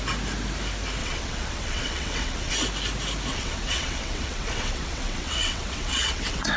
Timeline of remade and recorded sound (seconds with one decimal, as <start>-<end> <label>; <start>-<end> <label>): 0.0-1.0 recorded; 1.0-2.5 remade; 2.5-3.3 recorded; 3.3-6.6 remade